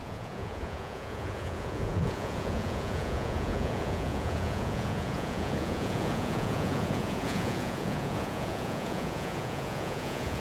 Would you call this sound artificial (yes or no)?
yes